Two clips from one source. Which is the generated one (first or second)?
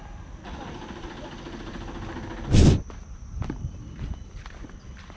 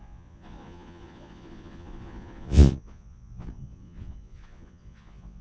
second